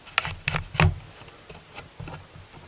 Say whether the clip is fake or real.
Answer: real